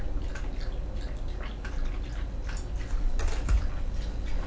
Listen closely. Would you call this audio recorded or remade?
recorded